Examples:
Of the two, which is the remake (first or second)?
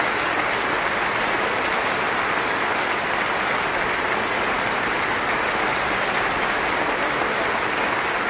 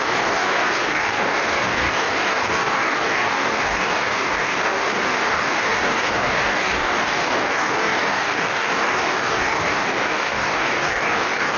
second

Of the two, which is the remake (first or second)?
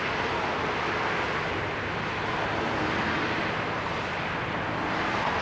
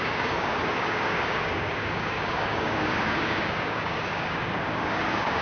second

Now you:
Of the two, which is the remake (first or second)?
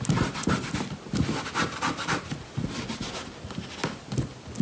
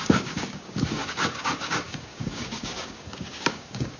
second